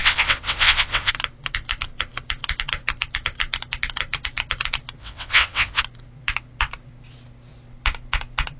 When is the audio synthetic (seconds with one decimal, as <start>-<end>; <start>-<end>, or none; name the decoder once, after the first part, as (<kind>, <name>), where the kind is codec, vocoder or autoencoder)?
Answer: 0.0-1.1 (vocoder, WaveNeXt); 5.0-5.8